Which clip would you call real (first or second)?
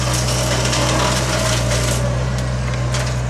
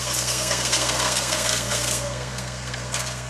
first